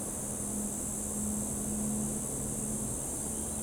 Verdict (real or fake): real